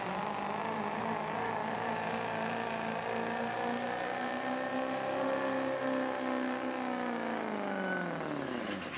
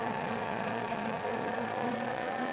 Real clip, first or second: first